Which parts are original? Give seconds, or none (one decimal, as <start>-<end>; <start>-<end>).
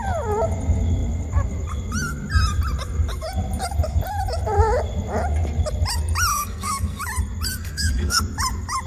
0.0-6.3; 7.0-7.5; 8.2-8.9